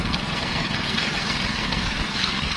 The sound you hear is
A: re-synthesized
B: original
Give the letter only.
A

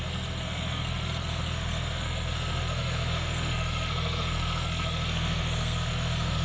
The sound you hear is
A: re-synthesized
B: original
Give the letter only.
A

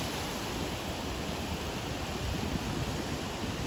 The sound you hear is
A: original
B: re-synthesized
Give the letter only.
A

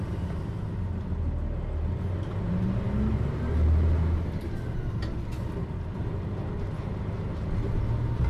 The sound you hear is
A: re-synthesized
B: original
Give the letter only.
B